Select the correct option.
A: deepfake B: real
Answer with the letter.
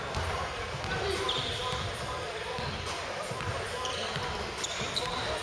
A